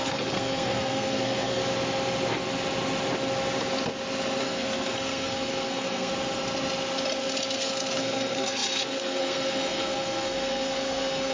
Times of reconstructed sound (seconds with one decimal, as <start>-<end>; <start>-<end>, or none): 0.0-1.6; 4.4-6.1; 7.5-11.3